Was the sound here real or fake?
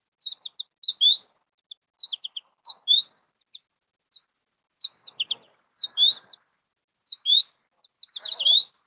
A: real